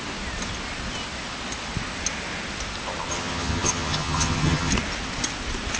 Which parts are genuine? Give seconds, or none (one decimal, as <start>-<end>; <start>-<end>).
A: 0.0-3.1; 4.7-5.8